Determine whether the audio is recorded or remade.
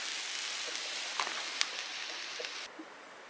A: recorded